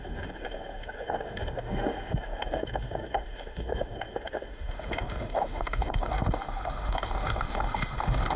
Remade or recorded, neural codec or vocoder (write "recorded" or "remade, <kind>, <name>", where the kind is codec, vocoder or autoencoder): remade, autoencoder, DAC-VAE